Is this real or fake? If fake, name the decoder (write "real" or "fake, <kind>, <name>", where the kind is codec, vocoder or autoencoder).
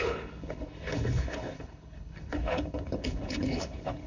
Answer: fake, codec, HILCodec